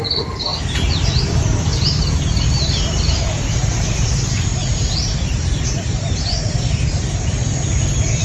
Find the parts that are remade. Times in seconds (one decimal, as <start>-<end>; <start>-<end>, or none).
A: 0.0-0.5; 1.2-1.7; 2.5-8.2

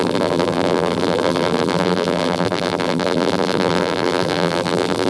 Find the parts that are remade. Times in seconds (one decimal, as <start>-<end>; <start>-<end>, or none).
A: 0.0-5.1